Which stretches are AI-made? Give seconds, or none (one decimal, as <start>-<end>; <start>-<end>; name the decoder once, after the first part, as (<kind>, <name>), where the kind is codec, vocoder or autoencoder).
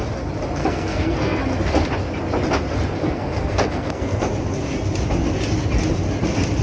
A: 0.6-1.4 (codec, SNAC); 3.0-4.3